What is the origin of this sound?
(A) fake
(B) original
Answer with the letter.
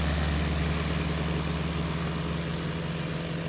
B